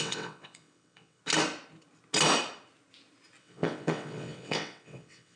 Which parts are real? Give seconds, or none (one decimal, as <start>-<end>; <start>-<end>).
1.2-3.4